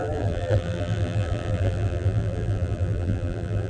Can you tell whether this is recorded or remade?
remade